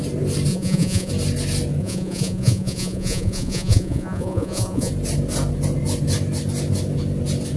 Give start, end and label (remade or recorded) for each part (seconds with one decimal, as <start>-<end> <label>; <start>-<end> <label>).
0.0-0.5 recorded; 0.5-1.1 remade; 1.1-1.8 recorded; 1.8-4.9 remade; 4.9-7.6 recorded